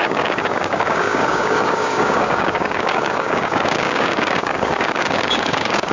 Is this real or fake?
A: fake